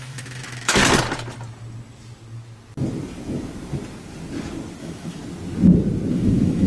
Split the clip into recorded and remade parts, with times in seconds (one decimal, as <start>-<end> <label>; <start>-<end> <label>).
0.0-0.8 remade; 0.8-4.8 recorded; 4.8-5.2 remade; 5.2-6.1 recorded; 6.1-6.7 remade